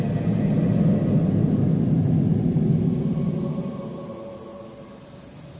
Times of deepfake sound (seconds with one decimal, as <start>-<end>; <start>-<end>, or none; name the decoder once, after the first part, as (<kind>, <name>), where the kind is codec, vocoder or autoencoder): none